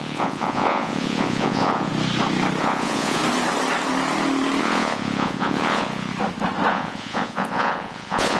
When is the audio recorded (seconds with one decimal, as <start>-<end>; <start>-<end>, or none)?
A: 1.9-2.6; 3.2-4.6; 6.1-6.7